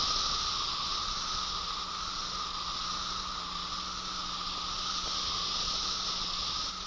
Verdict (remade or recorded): recorded